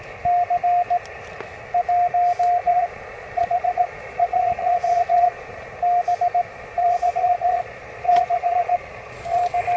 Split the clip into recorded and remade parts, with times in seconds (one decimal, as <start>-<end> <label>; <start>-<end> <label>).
0.0-2.6 recorded; 2.6-5.7 remade; 5.7-6.5 recorded; 6.5-9.4 remade; 9.4-9.8 recorded